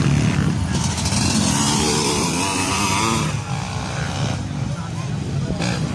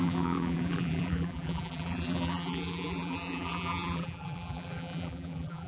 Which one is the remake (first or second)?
second